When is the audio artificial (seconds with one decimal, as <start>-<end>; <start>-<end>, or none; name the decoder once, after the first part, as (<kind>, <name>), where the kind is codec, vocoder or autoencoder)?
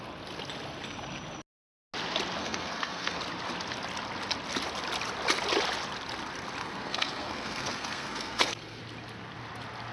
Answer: 2.4-3.2 (codec, SNAC); 6.6-8.8